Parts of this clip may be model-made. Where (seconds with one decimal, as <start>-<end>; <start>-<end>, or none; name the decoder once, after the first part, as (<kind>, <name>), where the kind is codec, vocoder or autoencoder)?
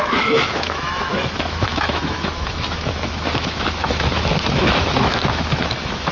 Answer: 0.0-6.1 (autoencoder, DAC-VAE)